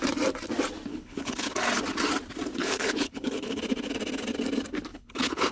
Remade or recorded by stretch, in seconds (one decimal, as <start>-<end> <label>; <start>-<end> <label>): 0.0-0.9 recorded; 0.9-1.5 remade; 1.5-2.6 recorded; 2.6-3.6 remade; 3.6-4.9 recorded; 4.9-5.5 remade